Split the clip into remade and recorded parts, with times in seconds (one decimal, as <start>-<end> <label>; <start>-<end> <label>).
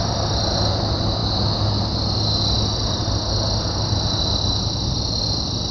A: 0.0-5.7 recorded